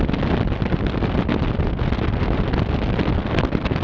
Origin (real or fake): real